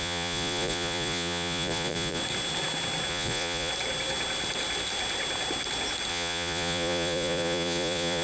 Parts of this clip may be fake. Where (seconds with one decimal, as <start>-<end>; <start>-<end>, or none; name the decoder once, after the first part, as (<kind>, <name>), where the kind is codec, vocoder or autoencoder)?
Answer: 0.0-2.2 (vocoder, Vocos); 3.1-3.7; 6.1-8.2